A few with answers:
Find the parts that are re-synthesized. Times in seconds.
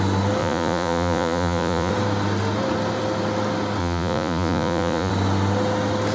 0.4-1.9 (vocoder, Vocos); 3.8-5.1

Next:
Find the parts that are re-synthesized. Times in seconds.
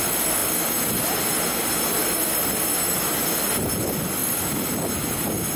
none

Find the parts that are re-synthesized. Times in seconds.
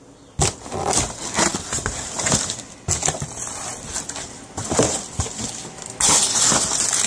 none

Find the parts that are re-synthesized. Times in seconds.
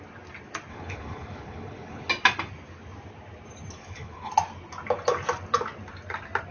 0.7-2.1 (codec, HILCodec); 3.8-4.3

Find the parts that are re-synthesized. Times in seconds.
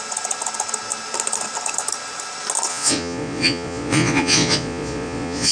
2.7-5.5 (vocoder, Vocos)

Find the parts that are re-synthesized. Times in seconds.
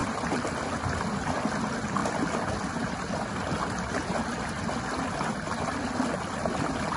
none